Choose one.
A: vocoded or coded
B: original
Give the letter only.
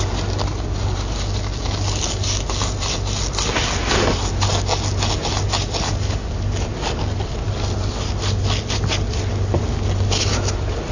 B